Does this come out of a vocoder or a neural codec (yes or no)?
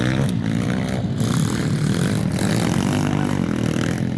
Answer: no